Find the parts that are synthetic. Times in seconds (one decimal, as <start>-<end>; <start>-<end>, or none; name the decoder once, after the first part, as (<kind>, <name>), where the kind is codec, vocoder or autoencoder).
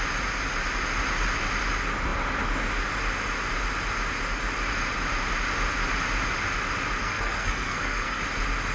7.0-8.2 (codec, SNAC)